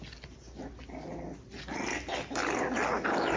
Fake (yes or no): no